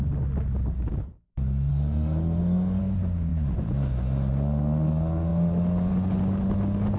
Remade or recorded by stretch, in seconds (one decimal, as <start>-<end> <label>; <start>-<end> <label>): 0.0-1.7 recorded; 1.7-2.8 remade; 2.8-7.0 recorded